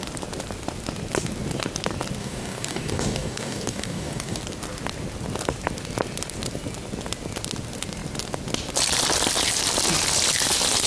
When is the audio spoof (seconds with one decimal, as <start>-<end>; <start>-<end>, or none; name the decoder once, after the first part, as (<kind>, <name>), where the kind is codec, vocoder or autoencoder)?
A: 2.2-4.4 (codec, DAC)